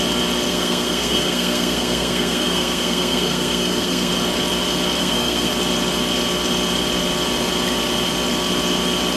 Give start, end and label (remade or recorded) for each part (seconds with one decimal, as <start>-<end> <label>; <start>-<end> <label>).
0.0-0.5 recorded; 0.5-4.1 remade; 4.1-5.0 recorded; 5.0-5.5 remade; 5.5-9.2 recorded